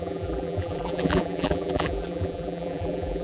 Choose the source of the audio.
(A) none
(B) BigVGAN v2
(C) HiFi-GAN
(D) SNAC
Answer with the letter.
B